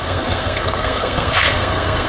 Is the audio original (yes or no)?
no